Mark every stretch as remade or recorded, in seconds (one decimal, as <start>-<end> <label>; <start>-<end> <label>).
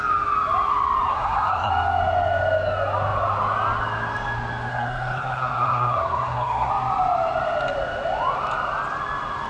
0.0-1.1 recorded; 1.1-1.7 remade; 1.7-4.7 recorded; 4.7-6.7 remade; 6.7-9.5 recorded